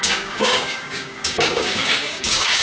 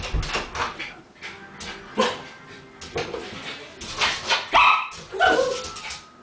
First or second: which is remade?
first